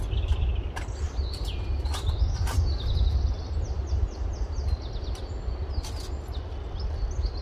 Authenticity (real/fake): real